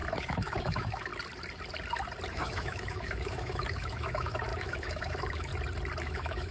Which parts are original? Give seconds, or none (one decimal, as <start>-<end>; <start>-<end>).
1.1-2.3; 5.5-6.0